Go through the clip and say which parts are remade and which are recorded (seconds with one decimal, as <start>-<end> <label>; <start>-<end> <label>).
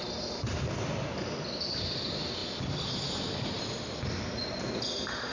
0.0-2.4 recorded; 2.4-3.6 remade; 3.6-5.3 recorded